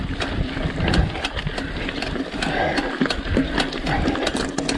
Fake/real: real